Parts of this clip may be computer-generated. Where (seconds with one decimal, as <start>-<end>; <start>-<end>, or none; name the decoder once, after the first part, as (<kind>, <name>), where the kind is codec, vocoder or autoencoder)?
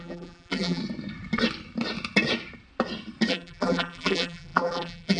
0.0-0.8 (vocoder, BigVGAN v2); 3.3-5.2